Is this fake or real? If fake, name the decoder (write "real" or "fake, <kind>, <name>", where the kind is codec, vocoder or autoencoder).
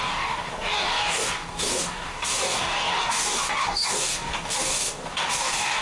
fake, codec, DAC